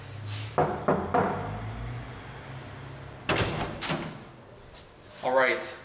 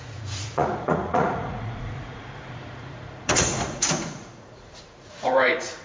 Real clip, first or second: first